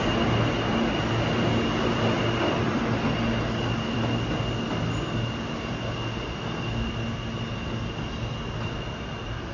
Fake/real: real